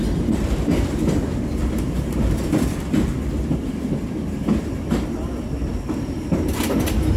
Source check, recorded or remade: recorded